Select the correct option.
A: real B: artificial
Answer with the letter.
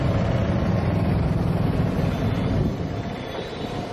A